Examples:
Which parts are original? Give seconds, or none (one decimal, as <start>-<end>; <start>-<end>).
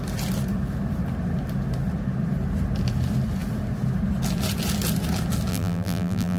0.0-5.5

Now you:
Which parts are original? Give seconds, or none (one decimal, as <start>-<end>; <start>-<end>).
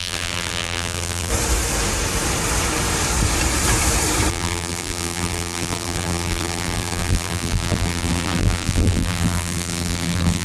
1.3-4.3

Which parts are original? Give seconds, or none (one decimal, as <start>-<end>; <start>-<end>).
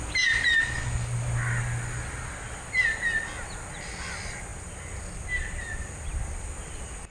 0.0-7.1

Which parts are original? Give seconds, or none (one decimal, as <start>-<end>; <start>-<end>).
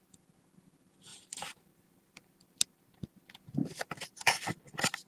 0.0-1.1; 2.7-3.6; 4.4-5.1